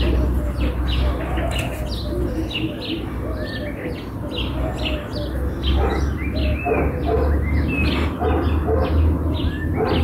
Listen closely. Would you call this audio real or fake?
real